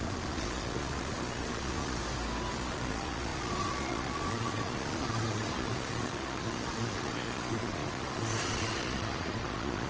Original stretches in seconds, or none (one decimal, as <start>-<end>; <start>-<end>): 2.0-2.5